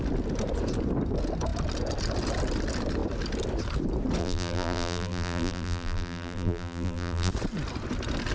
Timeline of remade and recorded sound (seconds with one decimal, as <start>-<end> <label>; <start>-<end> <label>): 0.0-4.2 recorded; 4.2-7.3 remade; 7.3-8.3 recorded